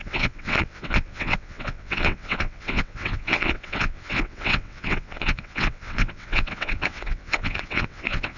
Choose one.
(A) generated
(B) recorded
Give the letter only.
A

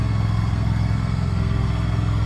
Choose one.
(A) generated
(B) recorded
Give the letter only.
A